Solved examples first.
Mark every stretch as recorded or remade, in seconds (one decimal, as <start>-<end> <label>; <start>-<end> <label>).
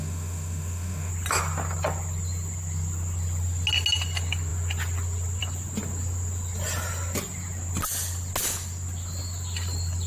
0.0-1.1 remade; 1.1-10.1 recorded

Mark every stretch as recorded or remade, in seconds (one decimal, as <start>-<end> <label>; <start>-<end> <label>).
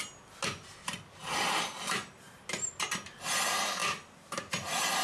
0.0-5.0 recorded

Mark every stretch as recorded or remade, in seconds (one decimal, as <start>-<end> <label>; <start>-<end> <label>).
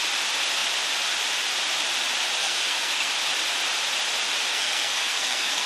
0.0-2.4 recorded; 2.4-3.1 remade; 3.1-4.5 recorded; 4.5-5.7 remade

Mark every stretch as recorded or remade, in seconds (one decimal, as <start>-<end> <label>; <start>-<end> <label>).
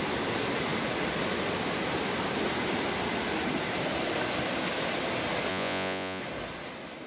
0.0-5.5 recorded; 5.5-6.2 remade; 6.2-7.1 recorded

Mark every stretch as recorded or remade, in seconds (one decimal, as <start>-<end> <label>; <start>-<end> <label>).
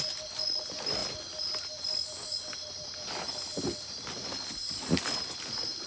0.0-5.9 recorded